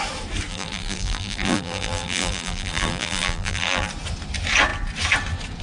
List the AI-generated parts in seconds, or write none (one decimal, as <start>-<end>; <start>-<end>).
0.5-3.9